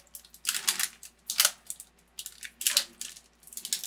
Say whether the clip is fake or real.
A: real